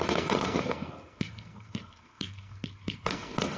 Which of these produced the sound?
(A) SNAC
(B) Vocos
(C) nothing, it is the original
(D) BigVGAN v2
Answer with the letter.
A